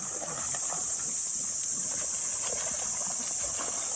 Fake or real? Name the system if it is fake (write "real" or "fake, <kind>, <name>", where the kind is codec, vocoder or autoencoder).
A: real